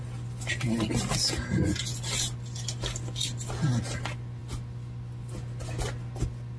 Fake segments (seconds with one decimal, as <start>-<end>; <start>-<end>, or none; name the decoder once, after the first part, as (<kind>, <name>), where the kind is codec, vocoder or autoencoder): none